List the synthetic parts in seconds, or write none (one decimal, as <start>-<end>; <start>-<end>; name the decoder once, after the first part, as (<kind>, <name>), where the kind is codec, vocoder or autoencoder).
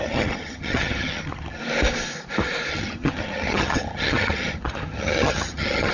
0.0-1.6 (vocoder, HiFi-GAN); 2.7-5.9